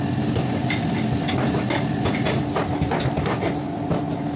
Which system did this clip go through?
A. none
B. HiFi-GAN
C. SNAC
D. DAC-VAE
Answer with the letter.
A